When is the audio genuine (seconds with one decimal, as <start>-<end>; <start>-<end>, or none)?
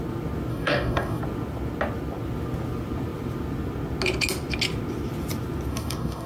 0.0-0.5; 1.2-5.7